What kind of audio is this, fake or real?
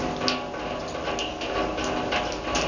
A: real